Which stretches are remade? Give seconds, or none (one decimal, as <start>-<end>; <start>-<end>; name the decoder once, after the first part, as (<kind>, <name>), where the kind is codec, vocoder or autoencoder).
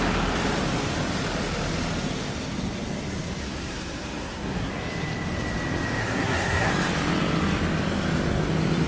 3.4-4.7 (codec, SNAC); 6.0-6.7